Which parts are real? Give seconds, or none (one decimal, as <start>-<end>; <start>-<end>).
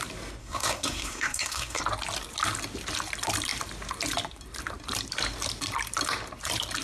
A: 0.0-0.4; 1.8-6.8